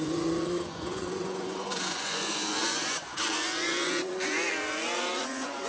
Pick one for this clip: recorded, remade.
remade